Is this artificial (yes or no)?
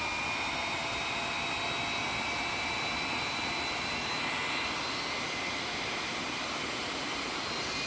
no